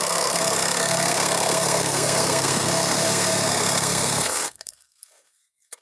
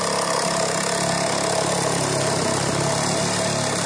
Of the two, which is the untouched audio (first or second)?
second